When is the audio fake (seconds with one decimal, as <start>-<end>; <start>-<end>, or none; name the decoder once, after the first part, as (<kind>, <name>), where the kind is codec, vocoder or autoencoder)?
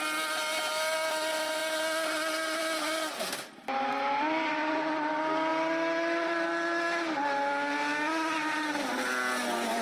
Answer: none